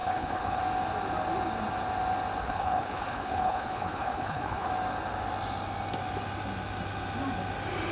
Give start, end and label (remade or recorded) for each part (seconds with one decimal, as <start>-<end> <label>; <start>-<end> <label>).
0.0-0.6 remade; 0.6-2.4 recorded; 2.4-4.7 remade; 4.7-7.9 recorded